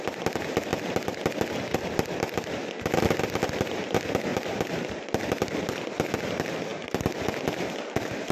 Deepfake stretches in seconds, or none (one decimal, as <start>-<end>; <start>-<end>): none